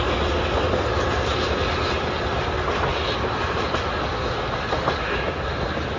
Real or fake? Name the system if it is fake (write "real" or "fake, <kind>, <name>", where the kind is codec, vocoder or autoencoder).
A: real